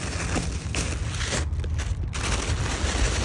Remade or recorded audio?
recorded